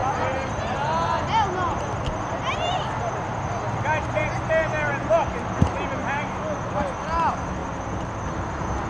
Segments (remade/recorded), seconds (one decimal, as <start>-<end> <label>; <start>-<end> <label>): 0.0-6.0 recorded; 6.0-7.0 remade; 7.0-8.9 recorded

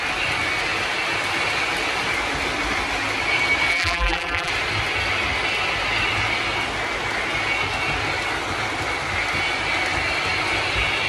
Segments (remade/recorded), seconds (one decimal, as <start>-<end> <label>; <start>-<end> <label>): 0.0-3.7 recorded; 3.7-4.5 remade; 4.5-11.1 recorded

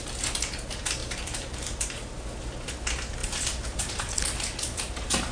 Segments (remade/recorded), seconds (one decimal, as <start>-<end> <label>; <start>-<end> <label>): 0.0-1.0 recorded; 1.0-2.4 remade; 2.4-5.3 recorded

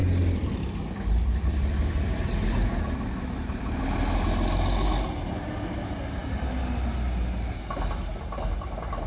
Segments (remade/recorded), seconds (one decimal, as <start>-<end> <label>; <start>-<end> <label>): 0.0-3.8 remade; 3.8-9.1 recorded

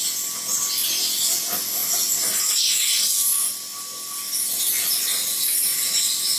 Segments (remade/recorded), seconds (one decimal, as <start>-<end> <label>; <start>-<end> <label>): 0.0-1.8 recorded; 1.8-2.4 remade; 2.4-6.4 recorded

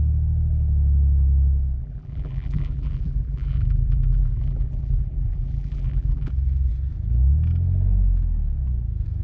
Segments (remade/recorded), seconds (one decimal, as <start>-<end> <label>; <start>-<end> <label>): 0.0-1.8 recorded; 1.8-6.3 remade; 6.3-9.2 recorded